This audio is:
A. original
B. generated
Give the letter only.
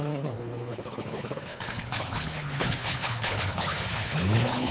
B